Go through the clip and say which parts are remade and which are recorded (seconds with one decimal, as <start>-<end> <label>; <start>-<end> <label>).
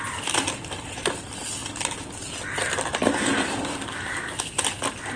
0.0-5.2 recorded